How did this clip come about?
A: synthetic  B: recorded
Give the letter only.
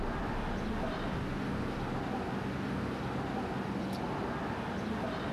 B